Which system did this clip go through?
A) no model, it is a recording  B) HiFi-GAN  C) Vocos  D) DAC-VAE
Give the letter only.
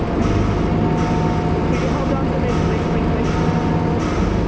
A